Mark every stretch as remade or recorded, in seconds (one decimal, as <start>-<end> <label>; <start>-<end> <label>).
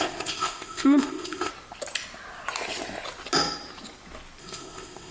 0.0-1.5 remade; 1.5-4.4 recorded; 4.4-5.1 remade